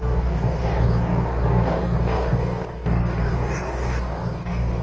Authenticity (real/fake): fake